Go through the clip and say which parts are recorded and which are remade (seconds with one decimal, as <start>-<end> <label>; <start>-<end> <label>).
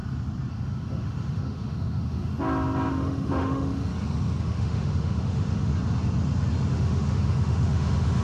0.0-0.5 recorded; 0.5-2.3 remade; 2.3-2.9 recorded; 2.9-3.9 remade; 3.9-4.4 recorded; 4.4-5.7 remade; 5.7-6.7 recorded; 6.7-8.2 remade